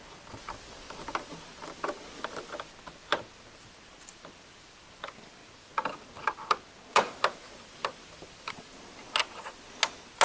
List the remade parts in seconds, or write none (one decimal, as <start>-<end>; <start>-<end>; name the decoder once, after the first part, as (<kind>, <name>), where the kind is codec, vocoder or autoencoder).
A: none